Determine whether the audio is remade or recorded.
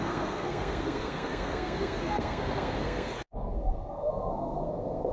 remade